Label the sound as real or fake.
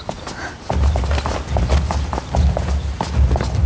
real